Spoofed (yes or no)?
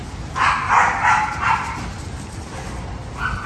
no